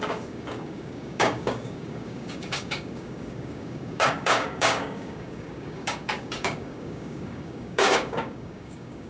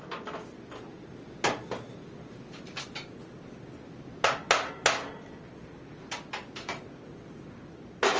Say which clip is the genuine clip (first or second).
second